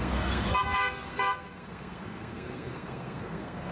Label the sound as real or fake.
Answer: fake